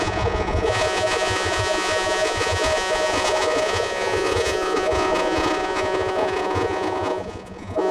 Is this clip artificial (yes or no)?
yes